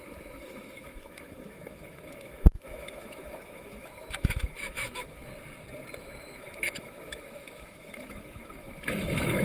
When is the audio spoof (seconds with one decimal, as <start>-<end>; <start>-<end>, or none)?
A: 0.0-5.3; 6.0-9.4